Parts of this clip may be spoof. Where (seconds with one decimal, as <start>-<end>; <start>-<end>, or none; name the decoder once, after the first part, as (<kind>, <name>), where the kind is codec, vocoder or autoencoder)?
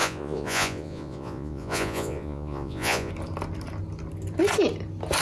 0.0-3.1 (vocoder, Vocos)